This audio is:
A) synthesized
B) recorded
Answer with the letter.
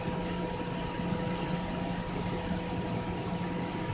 B